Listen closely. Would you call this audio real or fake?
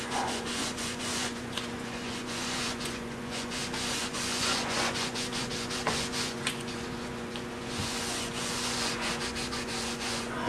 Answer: fake